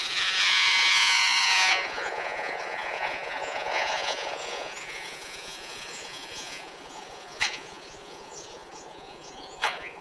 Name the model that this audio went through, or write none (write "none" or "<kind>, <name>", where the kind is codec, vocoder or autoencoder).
vocoder, Vocos